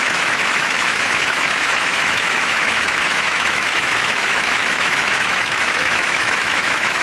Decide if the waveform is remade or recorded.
remade